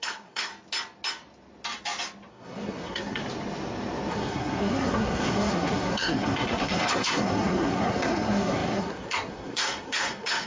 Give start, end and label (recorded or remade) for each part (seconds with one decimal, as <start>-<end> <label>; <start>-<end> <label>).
0.0-0.5 remade; 0.5-2.3 recorded; 2.3-3.2 remade; 3.2-4.1 recorded; 4.1-10.5 remade